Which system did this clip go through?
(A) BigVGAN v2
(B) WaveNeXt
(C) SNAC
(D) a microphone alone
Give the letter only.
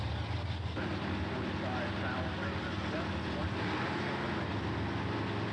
D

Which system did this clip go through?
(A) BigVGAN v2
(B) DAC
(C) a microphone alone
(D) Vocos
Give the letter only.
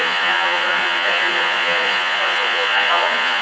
D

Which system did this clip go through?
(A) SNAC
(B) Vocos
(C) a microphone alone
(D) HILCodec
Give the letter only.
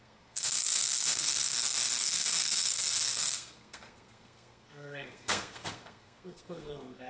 A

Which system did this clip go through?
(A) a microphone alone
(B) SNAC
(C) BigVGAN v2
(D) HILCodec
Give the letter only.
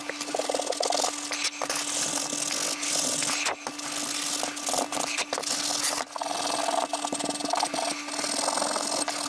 A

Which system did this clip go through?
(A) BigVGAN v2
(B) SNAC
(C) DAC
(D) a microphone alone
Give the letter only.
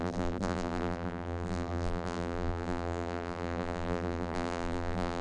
A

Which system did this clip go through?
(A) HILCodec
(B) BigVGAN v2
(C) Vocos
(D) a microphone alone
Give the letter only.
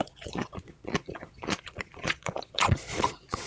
C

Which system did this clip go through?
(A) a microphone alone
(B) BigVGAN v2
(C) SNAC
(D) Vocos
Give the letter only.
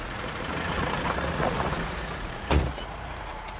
D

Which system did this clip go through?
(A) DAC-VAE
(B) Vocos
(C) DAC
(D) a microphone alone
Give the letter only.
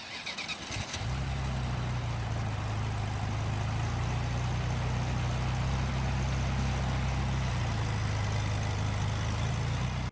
D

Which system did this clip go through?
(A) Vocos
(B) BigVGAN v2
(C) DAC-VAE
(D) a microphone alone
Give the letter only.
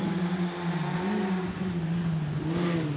D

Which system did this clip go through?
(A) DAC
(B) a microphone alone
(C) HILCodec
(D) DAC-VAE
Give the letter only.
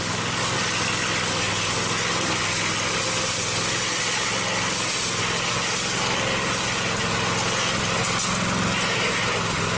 B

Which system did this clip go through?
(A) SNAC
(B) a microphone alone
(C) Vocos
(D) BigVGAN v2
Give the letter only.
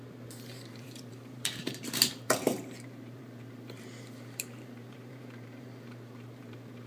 D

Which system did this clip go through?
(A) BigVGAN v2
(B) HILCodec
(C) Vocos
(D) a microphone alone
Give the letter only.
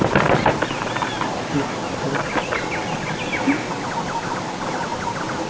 D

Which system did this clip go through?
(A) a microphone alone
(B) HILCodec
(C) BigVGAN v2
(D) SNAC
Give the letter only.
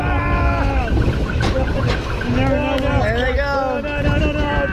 A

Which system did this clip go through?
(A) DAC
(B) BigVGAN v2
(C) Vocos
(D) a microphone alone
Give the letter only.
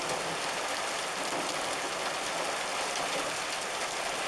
D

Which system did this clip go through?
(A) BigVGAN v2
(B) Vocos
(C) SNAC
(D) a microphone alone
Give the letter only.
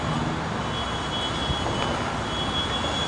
D